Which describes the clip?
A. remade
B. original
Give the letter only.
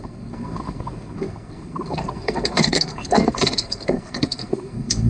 A